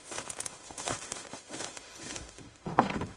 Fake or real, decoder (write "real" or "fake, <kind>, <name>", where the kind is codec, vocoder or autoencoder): fake, autoencoder, DAC-VAE